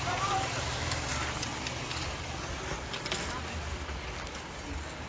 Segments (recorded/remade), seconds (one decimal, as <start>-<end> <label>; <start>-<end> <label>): 0.0-5.1 recorded